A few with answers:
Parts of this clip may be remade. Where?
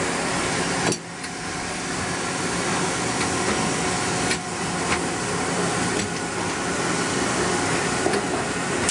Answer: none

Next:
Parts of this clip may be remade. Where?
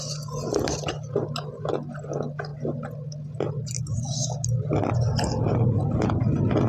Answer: none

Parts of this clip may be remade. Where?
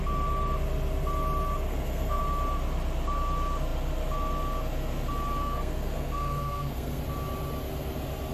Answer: 1.7-2.2 (codec, SNAC); 5.4-7.0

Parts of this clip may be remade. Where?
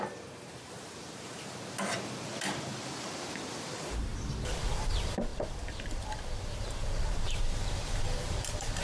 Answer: 0.0-4.1 (vocoder, BigVGAN v2); 4.7-8.8